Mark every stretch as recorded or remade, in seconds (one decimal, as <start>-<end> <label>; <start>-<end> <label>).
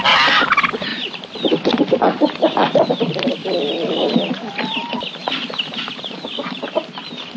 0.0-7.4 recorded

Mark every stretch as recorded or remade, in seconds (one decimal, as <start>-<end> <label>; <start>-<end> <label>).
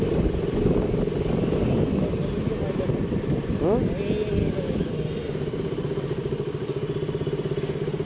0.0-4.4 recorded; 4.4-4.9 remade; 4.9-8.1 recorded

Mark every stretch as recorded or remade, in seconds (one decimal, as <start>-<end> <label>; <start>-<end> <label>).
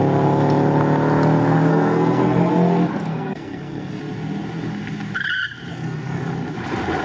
0.0-1.7 recorded; 1.7-2.5 remade; 2.5-3.1 recorded; 3.1-4.0 remade; 4.0-5.7 recorded; 5.7-6.2 remade; 6.2-7.0 recorded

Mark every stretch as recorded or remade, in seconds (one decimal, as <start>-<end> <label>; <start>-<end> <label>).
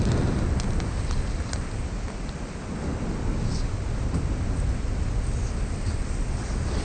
0.0-6.8 recorded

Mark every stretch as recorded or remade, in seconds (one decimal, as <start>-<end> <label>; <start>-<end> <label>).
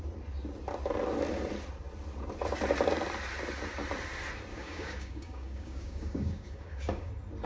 0.0-4.5 recorded; 4.5-7.1 remade; 7.1-7.5 recorded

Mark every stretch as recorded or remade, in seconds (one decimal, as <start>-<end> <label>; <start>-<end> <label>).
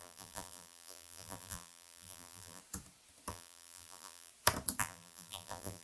0.0-2.6 remade; 2.6-3.3 recorded; 3.3-4.3 remade; 4.3-4.8 recorded; 4.8-5.8 remade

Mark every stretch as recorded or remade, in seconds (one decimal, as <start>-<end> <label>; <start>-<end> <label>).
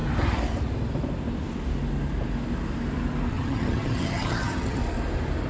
0.0-3.3 recorded; 3.3-4.8 remade; 4.8-5.5 recorded